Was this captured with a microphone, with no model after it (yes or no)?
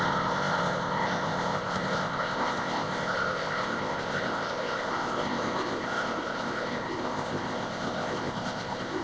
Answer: no